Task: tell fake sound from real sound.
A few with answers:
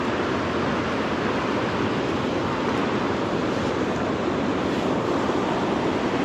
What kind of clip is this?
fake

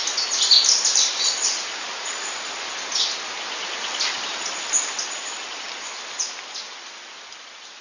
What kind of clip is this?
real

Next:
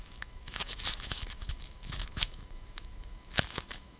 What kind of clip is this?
fake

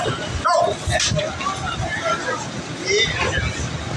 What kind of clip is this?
real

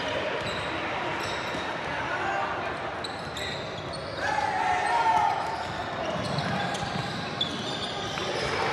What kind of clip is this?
real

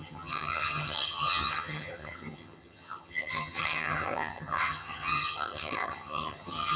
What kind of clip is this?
fake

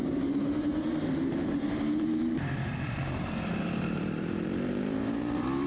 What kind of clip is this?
fake